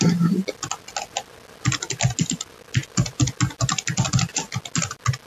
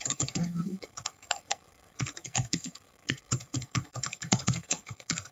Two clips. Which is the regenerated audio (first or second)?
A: second